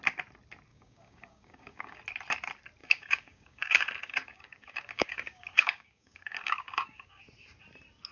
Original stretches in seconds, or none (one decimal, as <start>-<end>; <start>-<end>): 0.0-0.7; 2.0-2.8; 7.2-8.1